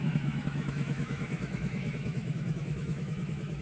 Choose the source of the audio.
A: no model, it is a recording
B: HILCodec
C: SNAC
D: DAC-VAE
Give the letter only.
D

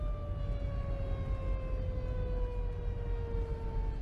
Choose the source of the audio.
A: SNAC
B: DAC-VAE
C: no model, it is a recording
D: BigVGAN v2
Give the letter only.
C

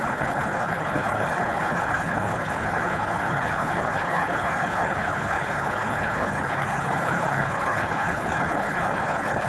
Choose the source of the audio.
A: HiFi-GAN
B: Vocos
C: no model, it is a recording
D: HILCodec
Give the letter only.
D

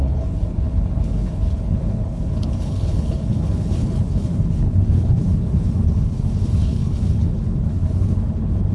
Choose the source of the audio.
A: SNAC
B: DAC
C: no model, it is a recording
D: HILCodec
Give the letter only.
D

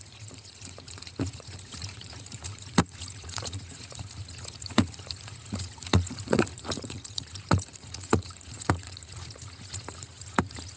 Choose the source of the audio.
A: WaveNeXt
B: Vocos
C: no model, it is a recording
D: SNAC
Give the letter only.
B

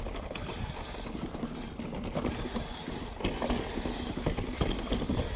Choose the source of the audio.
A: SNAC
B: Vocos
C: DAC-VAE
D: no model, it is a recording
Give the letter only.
D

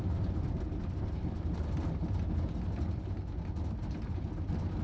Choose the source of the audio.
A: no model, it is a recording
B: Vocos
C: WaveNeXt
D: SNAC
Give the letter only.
A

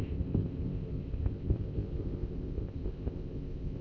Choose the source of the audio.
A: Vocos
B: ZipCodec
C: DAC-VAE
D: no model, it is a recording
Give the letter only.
B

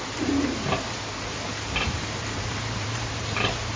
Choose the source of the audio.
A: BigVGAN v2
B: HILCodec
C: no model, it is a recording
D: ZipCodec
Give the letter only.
A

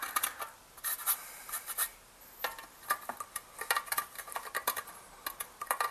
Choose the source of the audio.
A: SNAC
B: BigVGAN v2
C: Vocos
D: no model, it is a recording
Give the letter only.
D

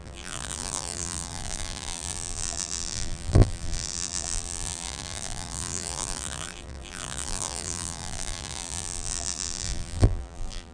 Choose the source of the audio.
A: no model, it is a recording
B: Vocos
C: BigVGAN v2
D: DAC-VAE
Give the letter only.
C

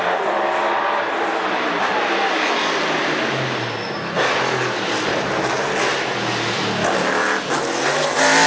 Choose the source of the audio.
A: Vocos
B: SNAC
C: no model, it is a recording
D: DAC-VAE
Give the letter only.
C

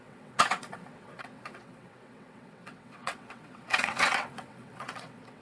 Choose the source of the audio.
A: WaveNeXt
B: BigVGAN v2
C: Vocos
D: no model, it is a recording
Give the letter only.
A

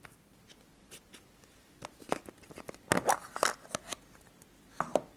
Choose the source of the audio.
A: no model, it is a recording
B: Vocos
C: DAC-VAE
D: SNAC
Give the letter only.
A